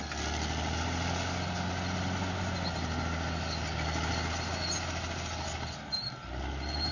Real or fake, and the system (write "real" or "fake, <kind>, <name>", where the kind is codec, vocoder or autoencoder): real